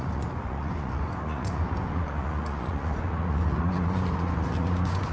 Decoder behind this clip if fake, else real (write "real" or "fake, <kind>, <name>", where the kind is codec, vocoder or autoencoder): fake, vocoder, Vocos